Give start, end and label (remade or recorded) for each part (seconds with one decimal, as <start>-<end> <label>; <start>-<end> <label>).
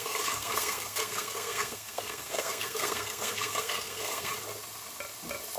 0.0-4.3 remade; 4.3-5.6 recorded